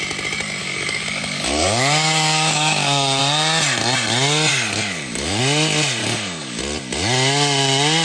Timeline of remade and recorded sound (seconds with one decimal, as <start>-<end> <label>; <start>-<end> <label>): 0.0-0.6 recorded; 0.6-3.2 remade; 3.2-4.5 recorded; 4.5-5.4 remade; 5.4-6.0 recorded; 6.0-6.6 remade; 6.6-8.0 recorded